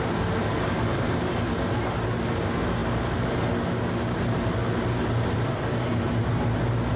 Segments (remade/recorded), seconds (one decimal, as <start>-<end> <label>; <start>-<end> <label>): 0.0-0.4 recorded; 0.4-1.3 remade; 1.3-7.0 recorded

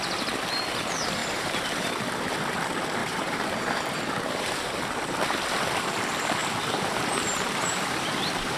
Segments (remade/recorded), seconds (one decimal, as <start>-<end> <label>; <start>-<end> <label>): 0.0-1.2 recorded; 1.2-1.9 remade; 1.9-3.0 recorded; 3.0-5.1 remade; 5.1-6.4 recorded; 6.4-8.6 remade

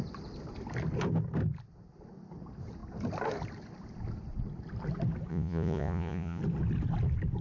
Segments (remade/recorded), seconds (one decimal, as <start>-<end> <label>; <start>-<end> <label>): 0.0-5.3 recorded; 5.3-6.4 remade; 6.4-7.4 recorded

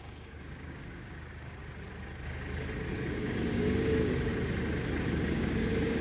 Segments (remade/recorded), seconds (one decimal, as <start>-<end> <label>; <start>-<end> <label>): 0.0-1.6 remade; 1.6-2.9 recorded; 2.9-4.3 remade; 4.3-5.3 recorded; 5.3-6.0 remade

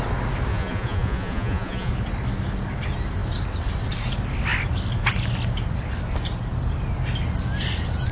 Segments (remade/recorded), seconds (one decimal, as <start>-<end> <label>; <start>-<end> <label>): 0.0-0.5 recorded; 0.5-1.9 remade; 1.9-8.1 recorded

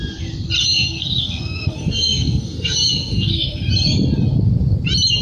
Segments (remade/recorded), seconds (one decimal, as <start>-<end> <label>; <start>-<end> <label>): 0.0-0.6 recorded; 0.6-3.7 remade; 3.7-5.2 recorded

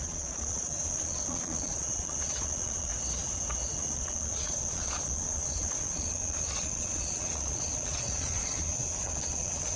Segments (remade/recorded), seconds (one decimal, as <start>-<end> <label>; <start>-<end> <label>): 0.0-2.9 remade; 2.9-3.7 recorded; 3.7-9.8 remade

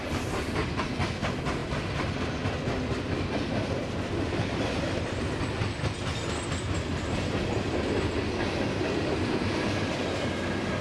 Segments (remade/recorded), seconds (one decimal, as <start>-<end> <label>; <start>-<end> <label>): 0.0-10.8 recorded